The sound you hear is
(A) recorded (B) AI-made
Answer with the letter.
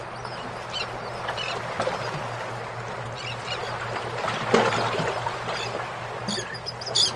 A